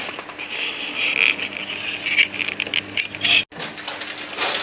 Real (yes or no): yes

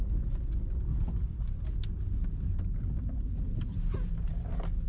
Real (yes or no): yes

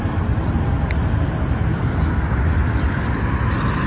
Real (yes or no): yes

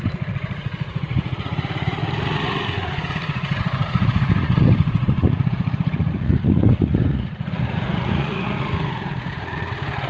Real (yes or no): no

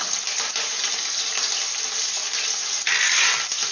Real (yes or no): yes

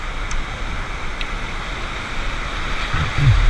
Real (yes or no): yes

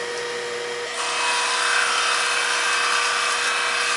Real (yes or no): yes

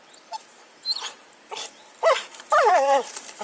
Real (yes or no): no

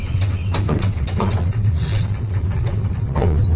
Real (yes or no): no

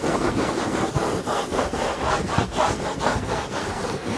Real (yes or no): no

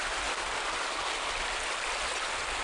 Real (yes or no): yes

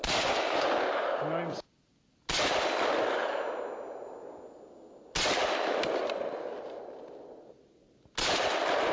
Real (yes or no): yes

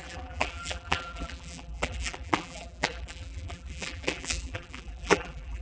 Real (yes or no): no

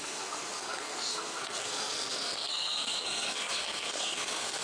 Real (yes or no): no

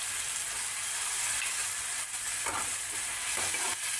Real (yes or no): yes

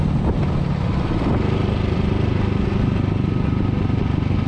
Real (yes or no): yes